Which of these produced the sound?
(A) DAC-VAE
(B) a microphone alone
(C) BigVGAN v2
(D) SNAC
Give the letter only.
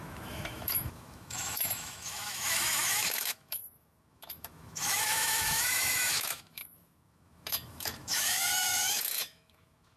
A